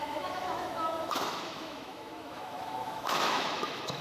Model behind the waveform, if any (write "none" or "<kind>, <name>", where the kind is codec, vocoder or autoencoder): autoencoder, DAC-VAE